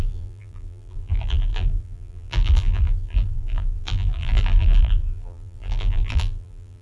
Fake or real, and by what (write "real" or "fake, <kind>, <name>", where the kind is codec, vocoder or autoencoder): fake, vocoder, BigVGAN v2